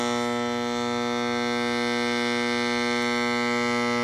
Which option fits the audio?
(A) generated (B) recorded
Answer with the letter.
B